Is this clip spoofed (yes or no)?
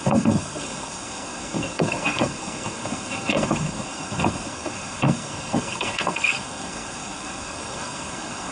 yes